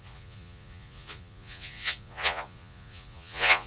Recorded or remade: remade